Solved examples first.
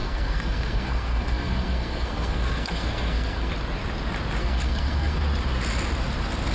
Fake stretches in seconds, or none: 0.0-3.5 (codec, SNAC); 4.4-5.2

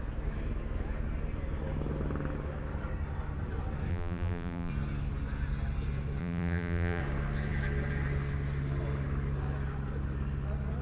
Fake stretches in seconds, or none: 3.9-4.7 (vocoder, BigVGAN v2); 6.2-7.0

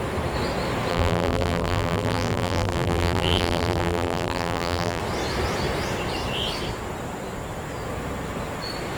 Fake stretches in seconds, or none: 0.9-5.0 (vocoder, BigVGAN v2)

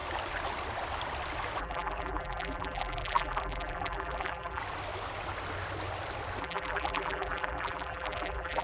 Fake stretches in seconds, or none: 1.6-4.6 (vocoder, BigVGAN v2); 6.4-8.6

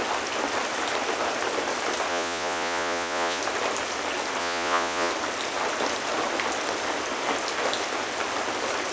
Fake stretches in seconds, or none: 2.1-3.4 (vocoder, Vocos); 4.4-5.1

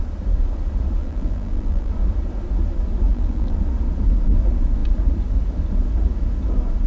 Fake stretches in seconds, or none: 1.0-1.9 (vocoder, BigVGAN v2); 3.1-3.6

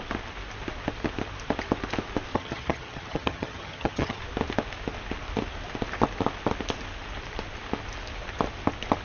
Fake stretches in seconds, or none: 2.3-4.2 (vocoder, HiFi-GAN)